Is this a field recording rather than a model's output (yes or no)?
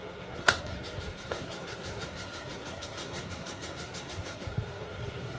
no